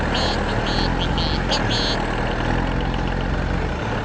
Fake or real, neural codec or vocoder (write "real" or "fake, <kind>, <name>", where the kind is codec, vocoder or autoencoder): real